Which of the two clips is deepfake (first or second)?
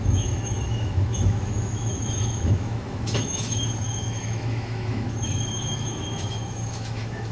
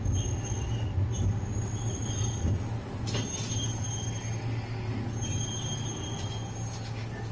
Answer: first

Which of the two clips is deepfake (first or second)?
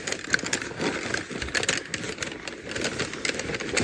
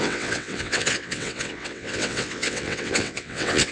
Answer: second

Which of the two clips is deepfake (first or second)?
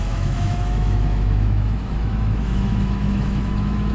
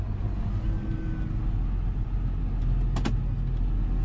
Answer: first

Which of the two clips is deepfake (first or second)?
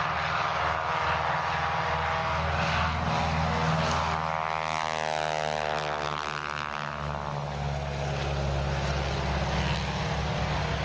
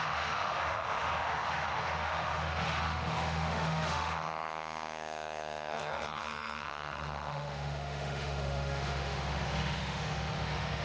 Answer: second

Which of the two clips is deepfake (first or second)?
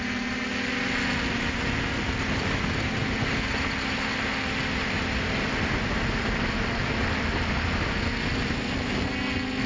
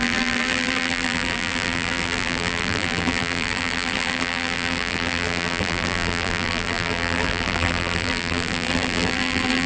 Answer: second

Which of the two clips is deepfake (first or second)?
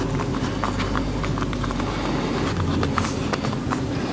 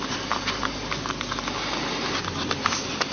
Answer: second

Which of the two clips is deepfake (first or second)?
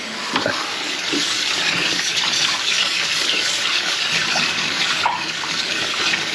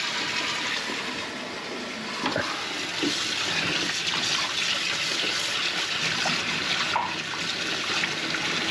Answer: first